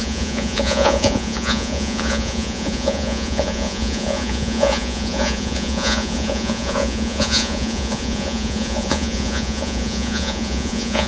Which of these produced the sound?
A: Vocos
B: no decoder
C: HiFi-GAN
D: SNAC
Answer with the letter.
A